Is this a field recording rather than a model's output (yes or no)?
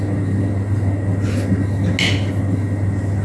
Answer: yes